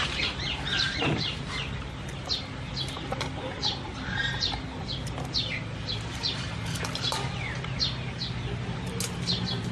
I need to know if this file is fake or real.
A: real